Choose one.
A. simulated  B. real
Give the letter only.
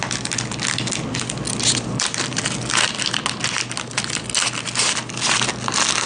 B